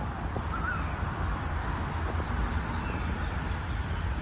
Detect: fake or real real